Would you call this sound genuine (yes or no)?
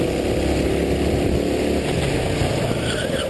yes